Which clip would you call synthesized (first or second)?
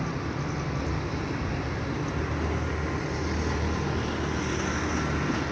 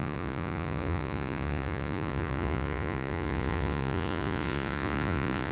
second